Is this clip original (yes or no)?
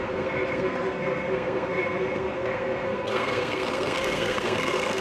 no